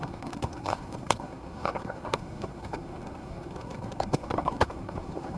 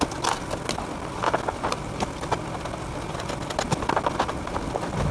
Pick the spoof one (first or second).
first